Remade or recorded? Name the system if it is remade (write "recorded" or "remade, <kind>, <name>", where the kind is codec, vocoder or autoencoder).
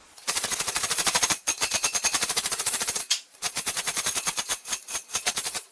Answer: remade, vocoder, Vocos